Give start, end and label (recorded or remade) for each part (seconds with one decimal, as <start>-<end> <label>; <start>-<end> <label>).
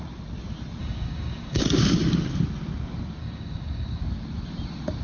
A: 0.0-0.8 recorded; 0.8-1.6 remade; 1.6-3.2 recorded; 3.2-4.0 remade; 4.0-5.0 recorded